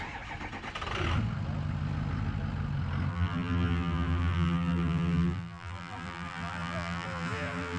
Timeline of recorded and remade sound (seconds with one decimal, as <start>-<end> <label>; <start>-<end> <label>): 0.0-3.1 recorded; 3.1-7.8 remade